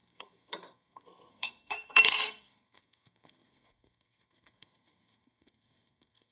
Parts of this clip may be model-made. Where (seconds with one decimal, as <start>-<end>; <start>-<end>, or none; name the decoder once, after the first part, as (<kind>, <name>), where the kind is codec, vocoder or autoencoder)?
0.0-6.3 (codec, SNAC)